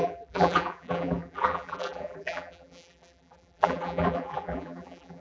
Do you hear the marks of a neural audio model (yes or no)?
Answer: yes